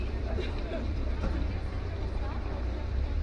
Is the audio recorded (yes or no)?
no